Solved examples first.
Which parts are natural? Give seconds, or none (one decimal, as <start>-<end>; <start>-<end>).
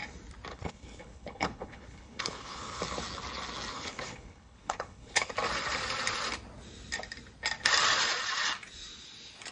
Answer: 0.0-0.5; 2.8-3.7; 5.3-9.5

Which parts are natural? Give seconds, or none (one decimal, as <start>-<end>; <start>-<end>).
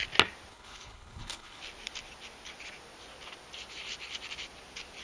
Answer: 0.0-0.5; 1.6-5.0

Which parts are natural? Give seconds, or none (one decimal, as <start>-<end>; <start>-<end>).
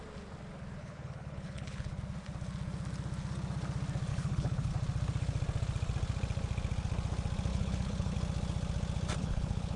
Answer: 0.0-0.8; 2.0-4.1; 4.7-7.5; 8.1-9.2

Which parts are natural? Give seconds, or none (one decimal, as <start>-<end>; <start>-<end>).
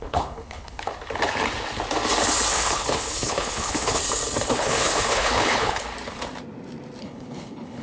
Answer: 0.9-2.5; 4.0-4.5; 5.9-7.0